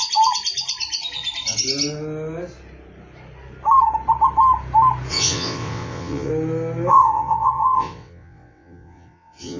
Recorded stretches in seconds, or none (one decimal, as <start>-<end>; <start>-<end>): 0.0-5.1; 6.3-6.9